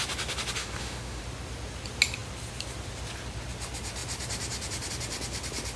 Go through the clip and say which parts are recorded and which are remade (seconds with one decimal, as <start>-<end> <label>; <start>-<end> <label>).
0.0-0.6 recorded; 0.6-1.2 remade; 1.2-5.8 recorded